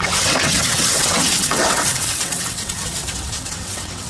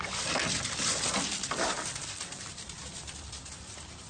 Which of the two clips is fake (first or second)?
first